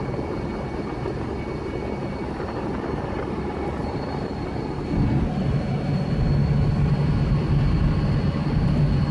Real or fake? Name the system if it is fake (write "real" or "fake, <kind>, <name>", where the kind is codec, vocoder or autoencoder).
real